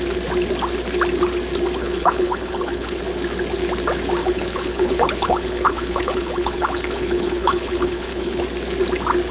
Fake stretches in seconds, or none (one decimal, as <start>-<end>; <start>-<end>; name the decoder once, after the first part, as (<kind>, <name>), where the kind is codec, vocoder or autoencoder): 1.8-3.0 (codec, HILCodec); 4.2-8.4

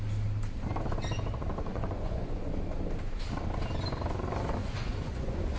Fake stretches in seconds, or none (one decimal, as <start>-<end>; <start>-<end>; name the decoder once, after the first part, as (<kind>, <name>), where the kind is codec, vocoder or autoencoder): 1.7-2.4 (vocoder, Vocos); 4.6-5.6

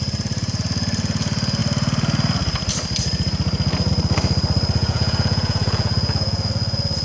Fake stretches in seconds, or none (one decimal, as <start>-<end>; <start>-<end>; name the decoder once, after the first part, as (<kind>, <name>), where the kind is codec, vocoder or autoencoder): 4.8-6.5 (vocoder, Vocos)

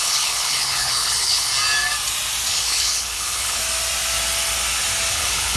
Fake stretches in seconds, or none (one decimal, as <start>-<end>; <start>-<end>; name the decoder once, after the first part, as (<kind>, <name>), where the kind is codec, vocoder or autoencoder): 0.0-1.5 (codec, HILCodec); 2.5-3.6; 5.1-5.6

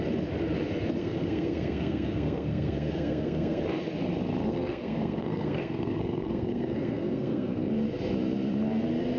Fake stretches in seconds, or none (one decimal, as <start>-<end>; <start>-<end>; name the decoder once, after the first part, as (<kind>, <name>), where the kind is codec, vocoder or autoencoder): 1.0-3.6 (codec, SNAC); 4.4-7.7

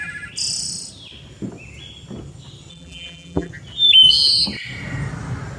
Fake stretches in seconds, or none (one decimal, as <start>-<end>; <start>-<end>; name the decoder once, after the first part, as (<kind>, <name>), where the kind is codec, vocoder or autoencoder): 2.7-3.5 (vocoder, BigVGAN v2)

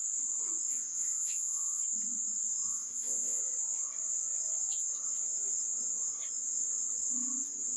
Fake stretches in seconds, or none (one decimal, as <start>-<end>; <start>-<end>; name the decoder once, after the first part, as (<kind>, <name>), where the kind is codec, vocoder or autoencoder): 0.7-1.8 (vocoder, Vocos); 2.7-3.4

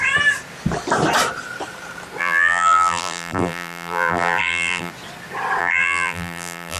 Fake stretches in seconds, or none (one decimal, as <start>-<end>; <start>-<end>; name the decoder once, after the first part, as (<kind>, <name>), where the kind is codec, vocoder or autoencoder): 2.2-4.9 (vocoder, BigVGAN v2); 5.6-6.8